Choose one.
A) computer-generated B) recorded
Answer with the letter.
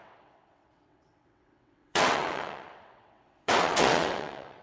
A